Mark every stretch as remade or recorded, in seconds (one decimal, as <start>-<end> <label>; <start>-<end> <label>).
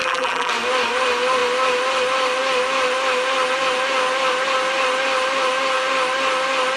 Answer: 0.0-0.5 remade; 0.5-6.8 recorded